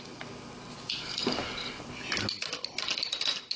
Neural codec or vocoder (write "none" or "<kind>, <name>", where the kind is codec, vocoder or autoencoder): none